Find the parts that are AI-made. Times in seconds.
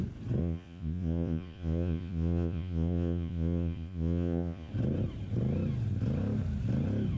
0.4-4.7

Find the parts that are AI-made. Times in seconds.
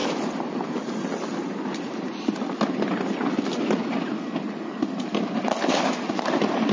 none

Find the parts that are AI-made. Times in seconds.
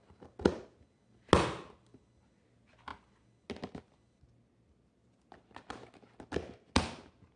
none